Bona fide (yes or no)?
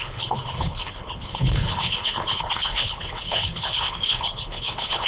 no